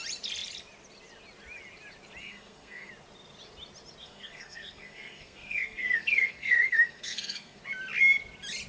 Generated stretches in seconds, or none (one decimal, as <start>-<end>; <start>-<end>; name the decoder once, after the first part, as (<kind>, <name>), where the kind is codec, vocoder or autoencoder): 2.2-2.9 (codec, SNAC); 4.0-7.6